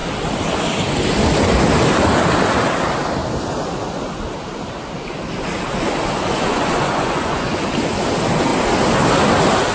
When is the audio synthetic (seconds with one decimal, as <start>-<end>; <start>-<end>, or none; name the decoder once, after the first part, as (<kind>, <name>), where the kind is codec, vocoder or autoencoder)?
6.3-7.6 (vocoder, Vocos)